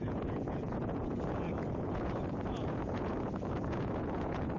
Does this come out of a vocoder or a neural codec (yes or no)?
yes